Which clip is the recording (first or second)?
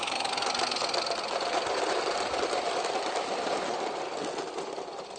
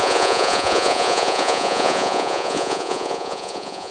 first